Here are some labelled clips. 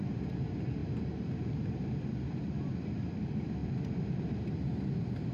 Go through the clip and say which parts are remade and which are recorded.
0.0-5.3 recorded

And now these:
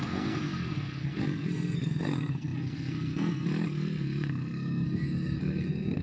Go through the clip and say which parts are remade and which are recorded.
0.0-6.0 remade